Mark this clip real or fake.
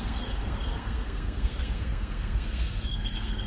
fake